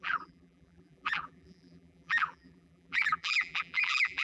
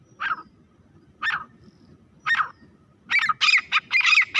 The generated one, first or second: first